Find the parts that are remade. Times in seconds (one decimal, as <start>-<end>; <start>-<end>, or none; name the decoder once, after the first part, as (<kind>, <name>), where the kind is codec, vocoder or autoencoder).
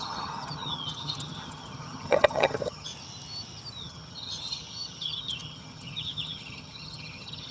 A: 0.0-2.9 (vocoder, HiFi-GAN); 3.8-7.5